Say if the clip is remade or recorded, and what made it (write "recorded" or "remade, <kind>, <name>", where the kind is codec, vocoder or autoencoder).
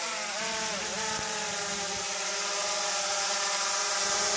remade, vocoder, BigVGAN v2